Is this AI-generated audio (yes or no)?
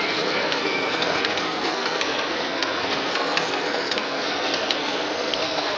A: yes